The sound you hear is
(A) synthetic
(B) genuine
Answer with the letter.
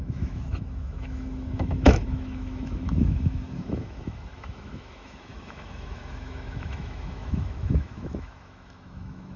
A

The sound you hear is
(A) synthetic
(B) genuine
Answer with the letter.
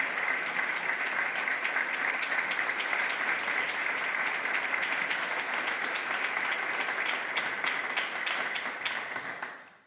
B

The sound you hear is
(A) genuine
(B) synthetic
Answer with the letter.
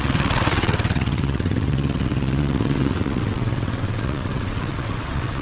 B